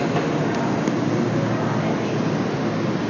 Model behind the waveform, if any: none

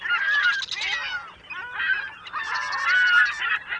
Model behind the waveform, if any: none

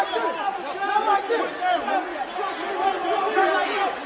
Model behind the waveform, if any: none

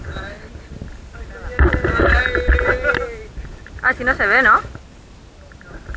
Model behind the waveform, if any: none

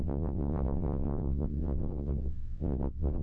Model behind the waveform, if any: vocoder, WaveNeXt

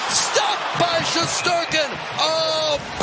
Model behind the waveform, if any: none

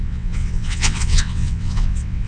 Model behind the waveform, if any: vocoder, WaveNeXt